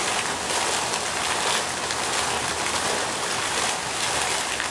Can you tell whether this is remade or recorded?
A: recorded